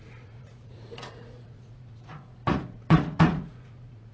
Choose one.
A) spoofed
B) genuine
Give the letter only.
A